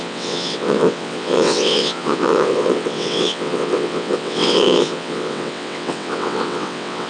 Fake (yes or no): yes